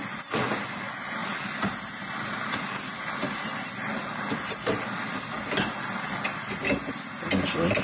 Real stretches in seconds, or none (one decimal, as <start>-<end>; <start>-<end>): 0.0-7.8